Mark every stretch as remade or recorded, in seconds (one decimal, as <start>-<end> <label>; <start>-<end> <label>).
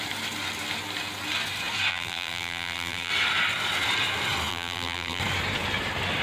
0.0-1.9 recorded; 1.9-3.1 remade; 3.1-4.5 recorded; 4.5-5.2 remade; 5.2-6.2 recorded